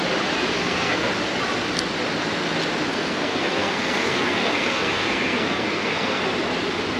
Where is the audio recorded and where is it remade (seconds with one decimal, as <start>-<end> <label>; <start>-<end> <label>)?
0.0-0.5 recorded; 0.5-1.1 remade; 1.1-2.9 recorded; 2.9-6.2 remade; 6.2-7.0 recorded